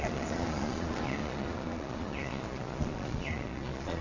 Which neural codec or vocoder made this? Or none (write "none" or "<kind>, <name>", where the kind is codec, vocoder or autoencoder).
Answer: vocoder, Vocos